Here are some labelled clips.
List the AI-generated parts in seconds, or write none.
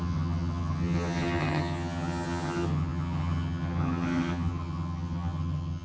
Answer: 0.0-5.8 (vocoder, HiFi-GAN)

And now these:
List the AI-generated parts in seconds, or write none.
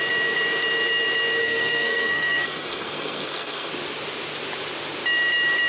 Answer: 1.4-3.7 (codec, SNAC)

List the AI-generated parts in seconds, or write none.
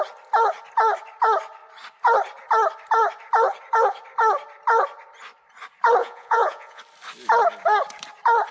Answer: 6.0-6.8 (vocoder, Vocos)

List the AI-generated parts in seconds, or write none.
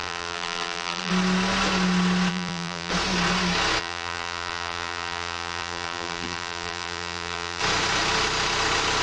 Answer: 0.0-1.1 (vocoder, BigVGAN v2); 2.3-2.9; 3.8-7.6